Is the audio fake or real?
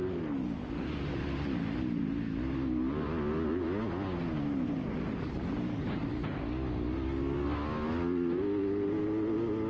real